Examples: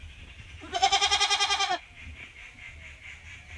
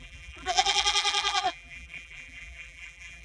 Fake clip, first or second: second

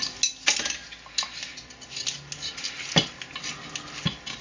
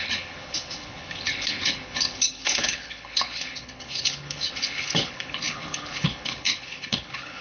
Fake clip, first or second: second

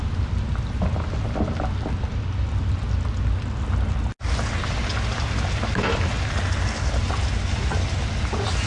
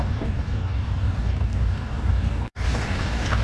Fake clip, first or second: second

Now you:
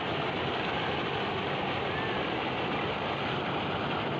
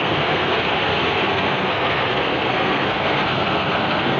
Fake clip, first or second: second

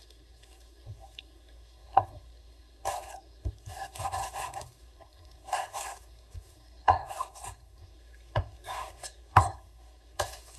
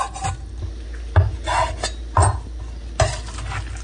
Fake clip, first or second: first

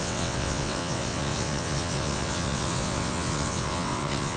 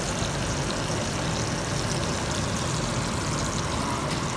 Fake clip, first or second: first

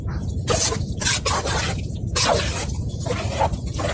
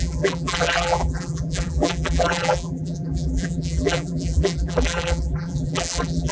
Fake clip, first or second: second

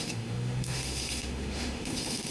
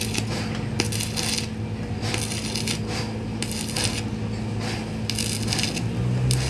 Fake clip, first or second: first